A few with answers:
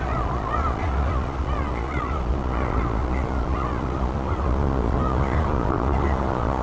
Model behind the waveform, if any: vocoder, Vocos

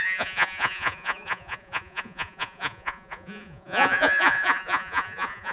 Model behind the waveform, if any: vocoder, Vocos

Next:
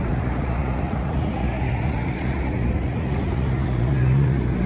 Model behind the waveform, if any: vocoder, Vocos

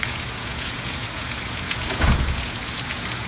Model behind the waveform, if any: vocoder, Vocos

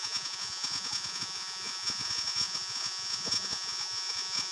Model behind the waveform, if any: vocoder, Vocos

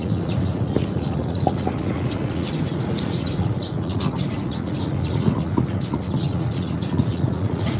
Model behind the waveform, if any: vocoder, Vocos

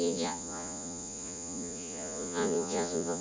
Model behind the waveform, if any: vocoder, Vocos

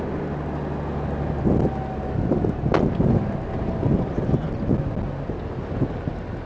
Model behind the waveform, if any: none